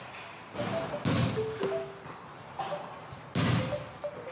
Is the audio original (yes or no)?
yes